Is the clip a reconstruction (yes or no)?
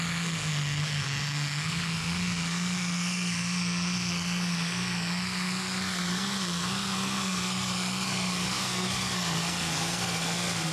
yes